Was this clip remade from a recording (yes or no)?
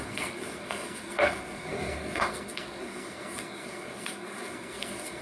yes